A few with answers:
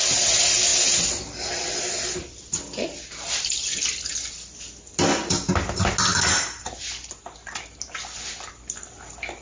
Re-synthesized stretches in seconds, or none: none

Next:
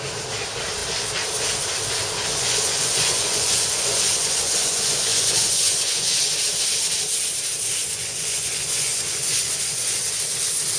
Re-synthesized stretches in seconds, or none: 2.3-6.3 (vocoder, Vocos); 7.8-10.2

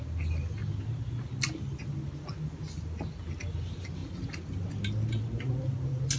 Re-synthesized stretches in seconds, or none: none

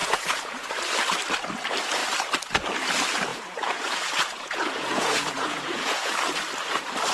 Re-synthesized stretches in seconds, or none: 0.0-0.7 (vocoder, Vocos); 3.3-6.1

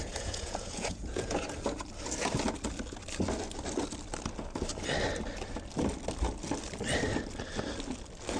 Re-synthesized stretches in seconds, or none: 0.0-1.4 (vocoder, Vocos)

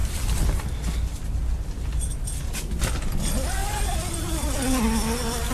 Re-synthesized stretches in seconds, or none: none